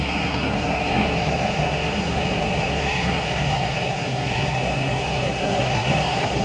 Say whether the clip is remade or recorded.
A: remade